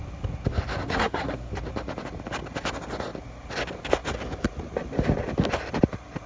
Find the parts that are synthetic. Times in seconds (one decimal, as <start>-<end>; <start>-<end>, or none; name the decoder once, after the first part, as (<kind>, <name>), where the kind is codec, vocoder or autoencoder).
0.8-1.5 (codec, SNAC)